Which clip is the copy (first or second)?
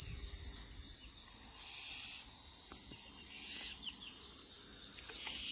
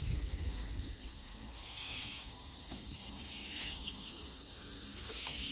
second